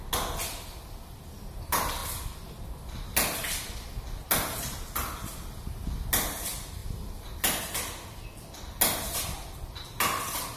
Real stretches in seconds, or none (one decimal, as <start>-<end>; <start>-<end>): 0.0-10.6